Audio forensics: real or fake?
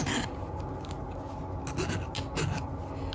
real